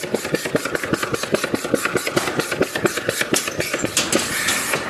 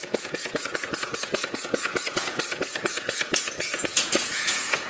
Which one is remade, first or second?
second